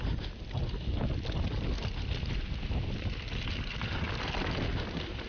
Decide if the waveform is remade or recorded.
recorded